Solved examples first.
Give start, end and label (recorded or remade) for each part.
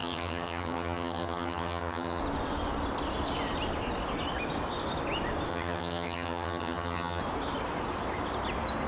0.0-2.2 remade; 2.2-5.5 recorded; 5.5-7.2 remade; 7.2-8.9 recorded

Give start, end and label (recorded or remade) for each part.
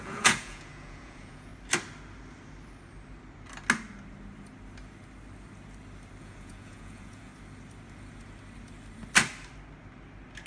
0.0-1.5 remade; 1.5-6.2 recorded; 6.2-7.3 remade; 7.3-10.5 recorded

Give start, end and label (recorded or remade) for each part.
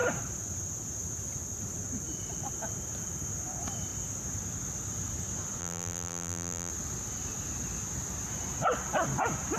0.0-5.6 recorded; 5.6-6.7 remade; 6.7-9.6 recorded